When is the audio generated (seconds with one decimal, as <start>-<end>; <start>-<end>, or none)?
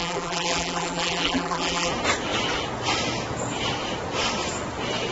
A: 0.0-1.9